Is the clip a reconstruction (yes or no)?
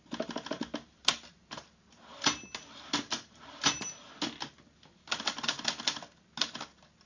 no